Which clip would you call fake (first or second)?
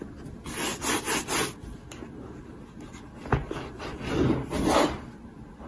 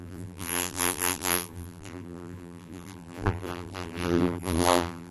second